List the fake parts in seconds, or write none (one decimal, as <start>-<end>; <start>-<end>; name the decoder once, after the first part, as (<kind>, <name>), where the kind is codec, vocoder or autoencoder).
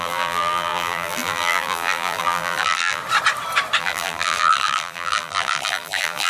0.0-3.0 (vocoder, BigVGAN v2); 3.8-6.3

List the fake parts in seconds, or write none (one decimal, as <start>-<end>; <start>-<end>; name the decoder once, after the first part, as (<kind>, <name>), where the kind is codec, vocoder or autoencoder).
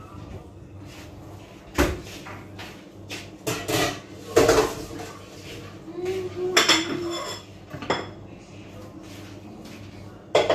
none